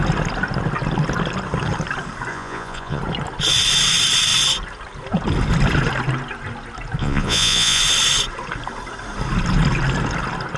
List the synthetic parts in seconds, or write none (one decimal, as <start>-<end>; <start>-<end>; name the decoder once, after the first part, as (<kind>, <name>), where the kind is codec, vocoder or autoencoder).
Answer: 2.3-3.0 (vocoder, Vocos); 7.0-7.8